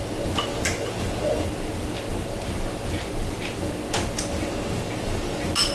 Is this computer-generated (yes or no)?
no